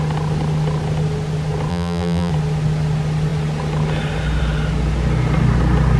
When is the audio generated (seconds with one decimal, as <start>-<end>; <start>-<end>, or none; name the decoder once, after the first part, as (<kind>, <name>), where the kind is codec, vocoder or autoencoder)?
1.7-2.3 (vocoder, BigVGAN v2)